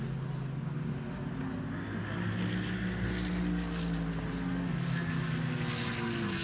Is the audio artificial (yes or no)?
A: no